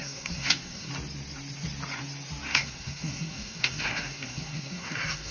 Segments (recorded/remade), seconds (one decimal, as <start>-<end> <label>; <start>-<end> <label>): 0.0-0.9 remade; 0.9-2.5 recorded; 2.5-5.3 remade